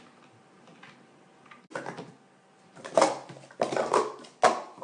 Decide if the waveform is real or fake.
real